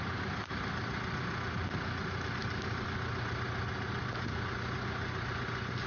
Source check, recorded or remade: recorded